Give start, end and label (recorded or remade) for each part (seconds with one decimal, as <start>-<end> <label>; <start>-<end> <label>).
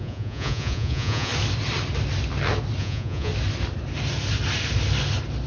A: 0.0-1.3 remade; 1.3-2.8 recorded; 2.8-3.3 remade; 3.3-5.5 recorded